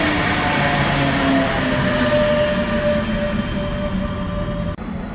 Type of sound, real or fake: real